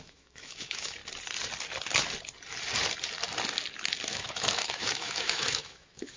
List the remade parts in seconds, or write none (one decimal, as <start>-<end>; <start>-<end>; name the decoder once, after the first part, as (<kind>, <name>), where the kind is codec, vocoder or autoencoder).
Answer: 0.0-1.0 (autoencoder, DAC-VAE); 4.1-6.2